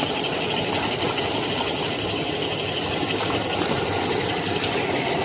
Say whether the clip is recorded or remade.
recorded